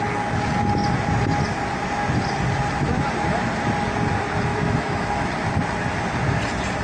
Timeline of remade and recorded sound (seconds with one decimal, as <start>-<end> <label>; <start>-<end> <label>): 0.0-4.5 recorded; 4.5-5.3 remade; 5.3-6.8 recorded

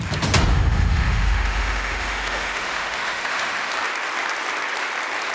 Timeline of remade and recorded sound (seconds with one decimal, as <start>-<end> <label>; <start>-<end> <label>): 0.0-0.5 recorded; 0.5-3.7 remade; 3.7-5.3 recorded

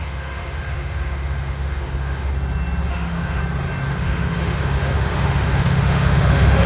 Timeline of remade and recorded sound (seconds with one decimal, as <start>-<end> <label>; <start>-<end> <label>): 0.0-2.3 remade; 2.3-2.9 recorded; 2.9-3.4 remade; 3.4-3.9 recorded; 3.9-6.7 remade

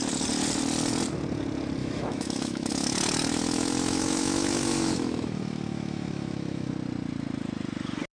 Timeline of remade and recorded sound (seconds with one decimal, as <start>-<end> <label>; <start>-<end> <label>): 0.0-1.8 recorded; 1.8-6.7 remade; 6.7-8.1 recorded

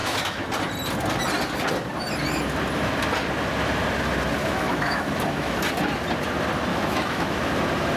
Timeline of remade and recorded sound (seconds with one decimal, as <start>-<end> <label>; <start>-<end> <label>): 0.0-0.5 remade; 0.5-4.4 recorded; 4.4-5.6 remade; 5.6-6.7 recorded; 6.7-7.4 remade; 7.4-8.0 recorded